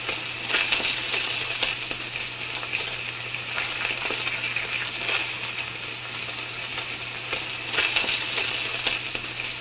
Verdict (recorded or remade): recorded